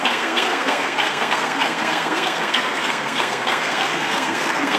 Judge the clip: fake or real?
fake